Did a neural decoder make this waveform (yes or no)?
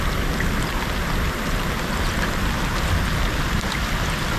no